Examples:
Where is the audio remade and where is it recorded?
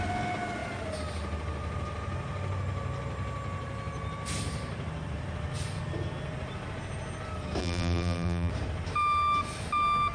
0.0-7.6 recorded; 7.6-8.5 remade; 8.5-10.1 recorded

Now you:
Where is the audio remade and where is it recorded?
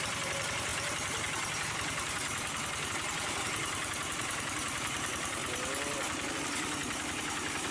0.0-0.7 remade; 0.7-2.9 recorded; 2.9-5.4 remade; 5.4-6.3 recorded; 6.3-7.7 remade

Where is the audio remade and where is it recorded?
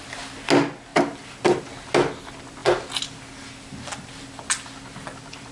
0.0-5.5 recorded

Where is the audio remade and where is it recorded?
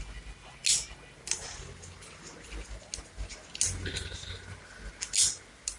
0.0-5.8 recorded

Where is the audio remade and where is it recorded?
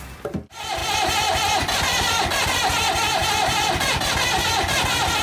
0.0-5.2 recorded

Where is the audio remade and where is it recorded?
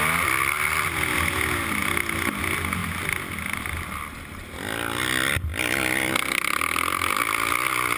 0.0-2.8 recorded; 2.8-3.6 remade; 3.6-5.5 recorded; 5.5-7.2 remade; 7.2-8.0 recorded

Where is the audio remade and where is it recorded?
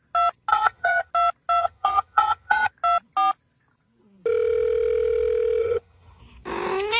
0.0-0.5 recorded; 0.5-1.1 remade; 1.1-1.6 recorded; 1.6-2.7 remade; 2.7-5.6 recorded; 5.6-6.2 remade; 6.2-7.0 recorded